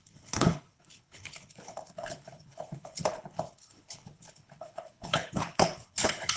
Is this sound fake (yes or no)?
yes